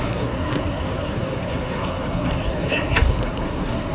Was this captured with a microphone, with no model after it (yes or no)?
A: no